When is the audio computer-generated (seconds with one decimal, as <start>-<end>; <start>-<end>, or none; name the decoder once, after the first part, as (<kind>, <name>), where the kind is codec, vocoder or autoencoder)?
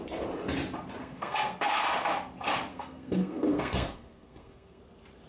1.0-1.8 (codec, SNAC); 2.7-4.8